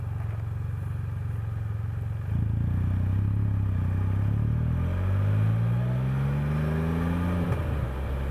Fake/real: real